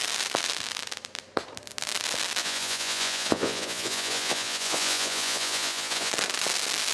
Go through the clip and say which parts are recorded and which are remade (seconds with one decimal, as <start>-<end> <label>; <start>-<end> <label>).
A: 0.0-2.4 recorded; 2.4-6.1 remade; 6.1-6.9 recorded